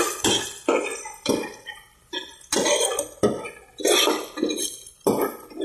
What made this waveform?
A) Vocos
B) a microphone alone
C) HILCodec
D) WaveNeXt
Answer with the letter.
B